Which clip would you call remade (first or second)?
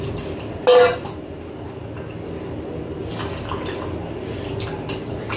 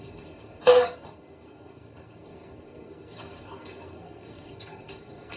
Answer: second